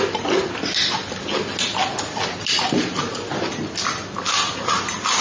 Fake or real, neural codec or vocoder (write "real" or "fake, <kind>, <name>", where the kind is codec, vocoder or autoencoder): real